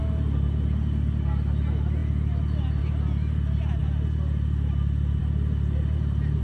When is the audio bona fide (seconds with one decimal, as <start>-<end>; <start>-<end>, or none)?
0.0-6.4